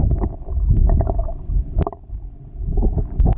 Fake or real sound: real